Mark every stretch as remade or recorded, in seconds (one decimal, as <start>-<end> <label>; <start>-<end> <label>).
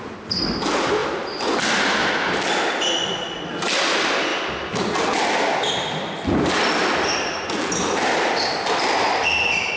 0.0-9.8 recorded